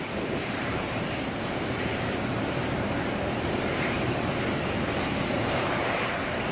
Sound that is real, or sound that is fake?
fake